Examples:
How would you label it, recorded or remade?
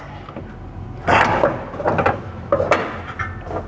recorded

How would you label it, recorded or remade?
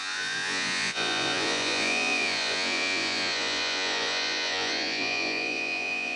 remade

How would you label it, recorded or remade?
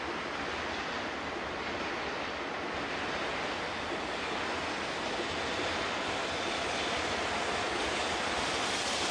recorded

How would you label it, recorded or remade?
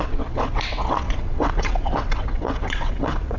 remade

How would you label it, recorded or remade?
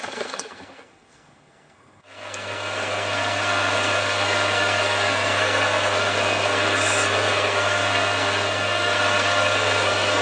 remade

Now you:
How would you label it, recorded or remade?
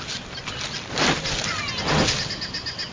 recorded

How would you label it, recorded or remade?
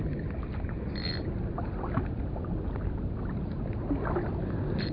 recorded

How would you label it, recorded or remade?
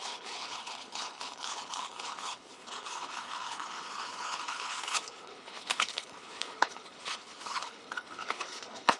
remade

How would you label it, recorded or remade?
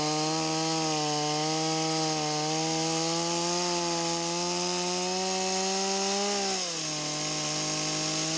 recorded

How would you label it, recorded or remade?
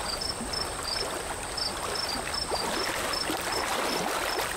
recorded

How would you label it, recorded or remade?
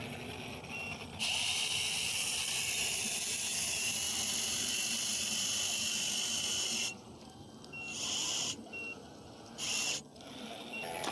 recorded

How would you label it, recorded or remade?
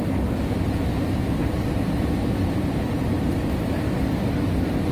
recorded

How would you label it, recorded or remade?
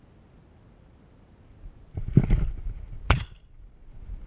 recorded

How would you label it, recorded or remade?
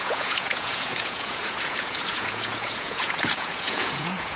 remade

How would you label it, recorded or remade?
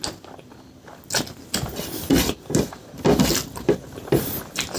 recorded